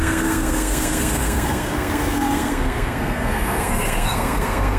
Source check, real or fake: fake